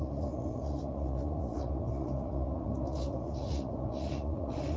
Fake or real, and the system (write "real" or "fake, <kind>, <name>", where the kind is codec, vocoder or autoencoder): fake, vocoder, Vocos